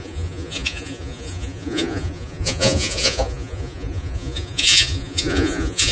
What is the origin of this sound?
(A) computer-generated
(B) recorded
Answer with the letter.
A